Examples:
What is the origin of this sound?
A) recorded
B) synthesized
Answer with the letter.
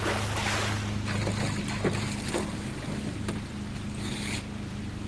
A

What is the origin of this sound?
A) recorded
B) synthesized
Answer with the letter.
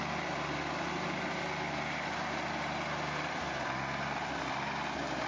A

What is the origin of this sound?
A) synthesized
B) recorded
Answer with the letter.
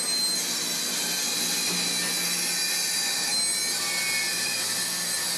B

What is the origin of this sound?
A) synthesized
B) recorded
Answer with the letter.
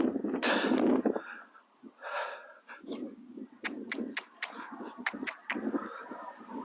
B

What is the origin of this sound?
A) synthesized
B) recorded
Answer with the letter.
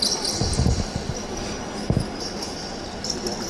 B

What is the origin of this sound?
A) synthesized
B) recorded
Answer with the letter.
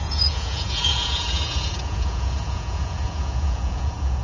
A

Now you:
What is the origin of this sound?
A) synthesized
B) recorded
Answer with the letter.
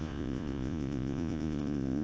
A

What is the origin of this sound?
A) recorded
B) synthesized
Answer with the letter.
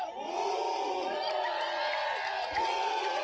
B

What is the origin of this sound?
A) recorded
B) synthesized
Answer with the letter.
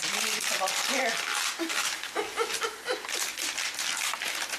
A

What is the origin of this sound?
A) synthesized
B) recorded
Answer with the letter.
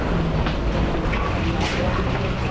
B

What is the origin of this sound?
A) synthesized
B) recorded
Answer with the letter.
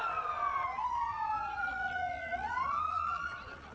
A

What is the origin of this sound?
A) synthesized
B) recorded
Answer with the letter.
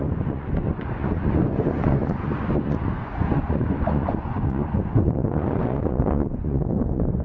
A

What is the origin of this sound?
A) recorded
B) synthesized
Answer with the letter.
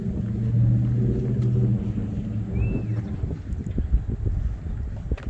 A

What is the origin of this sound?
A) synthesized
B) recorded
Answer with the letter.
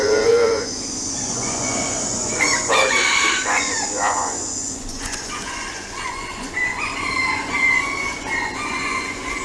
A